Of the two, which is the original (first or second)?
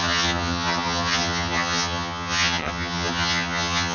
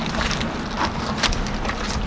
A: second